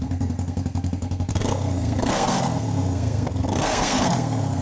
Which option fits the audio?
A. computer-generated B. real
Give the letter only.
A